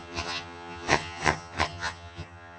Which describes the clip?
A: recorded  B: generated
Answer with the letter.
B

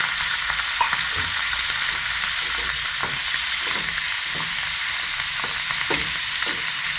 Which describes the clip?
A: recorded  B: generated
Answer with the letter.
A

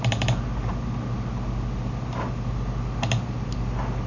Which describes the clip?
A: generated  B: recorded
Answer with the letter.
B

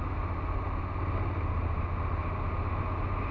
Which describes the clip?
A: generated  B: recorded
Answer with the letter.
B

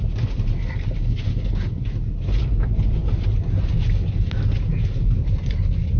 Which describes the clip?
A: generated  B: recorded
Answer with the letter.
B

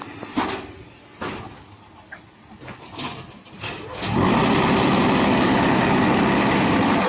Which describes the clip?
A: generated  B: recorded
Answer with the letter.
B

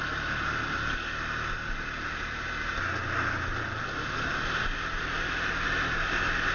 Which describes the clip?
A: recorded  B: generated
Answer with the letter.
A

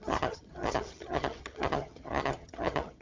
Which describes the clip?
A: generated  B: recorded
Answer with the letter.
A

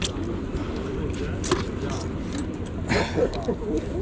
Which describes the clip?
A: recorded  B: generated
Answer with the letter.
A